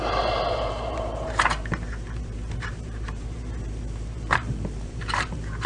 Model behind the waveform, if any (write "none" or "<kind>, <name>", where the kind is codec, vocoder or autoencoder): vocoder, BigVGAN v2